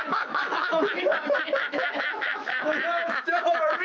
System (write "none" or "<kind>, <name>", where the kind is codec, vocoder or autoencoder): autoencoder, DAC-VAE